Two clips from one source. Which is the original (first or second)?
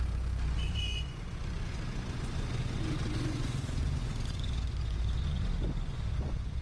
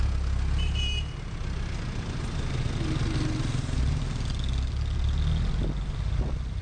second